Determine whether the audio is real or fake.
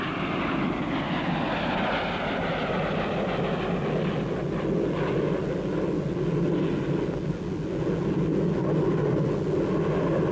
real